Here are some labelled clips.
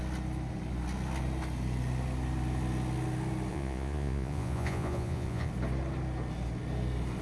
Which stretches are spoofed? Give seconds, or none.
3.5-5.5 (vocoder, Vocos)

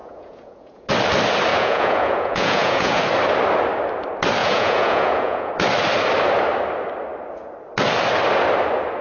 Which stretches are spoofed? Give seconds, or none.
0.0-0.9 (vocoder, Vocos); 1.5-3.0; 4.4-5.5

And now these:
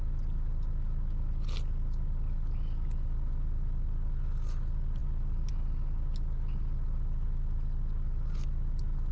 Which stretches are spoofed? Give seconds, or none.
none

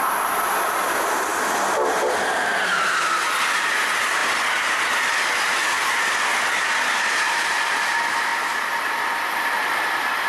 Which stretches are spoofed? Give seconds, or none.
none

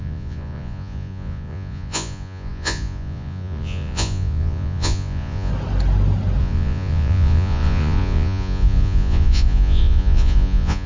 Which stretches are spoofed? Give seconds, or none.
0.0-5.5 (vocoder, Vocos); 6.4-10.9

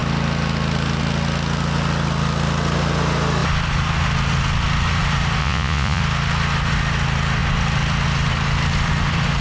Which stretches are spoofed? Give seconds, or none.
5.4-6.0 (vocoder, Vocos)

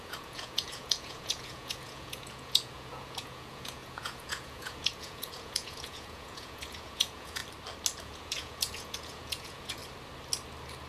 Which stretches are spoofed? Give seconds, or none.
0.0-7.4 (vocoder, Vocos); 8.0-9.8